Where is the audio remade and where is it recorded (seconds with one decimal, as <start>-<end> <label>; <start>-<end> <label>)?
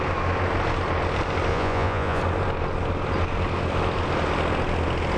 0.0-1.5 recorded; 1.5-2.2 remade; 2.2-5.2 recorded